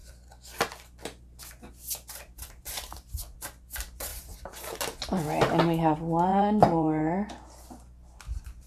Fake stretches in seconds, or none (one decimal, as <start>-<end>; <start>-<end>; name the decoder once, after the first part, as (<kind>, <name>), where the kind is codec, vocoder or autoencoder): 4.1-4.8 (vocoder, BigVGAN v2); 6.3-7.3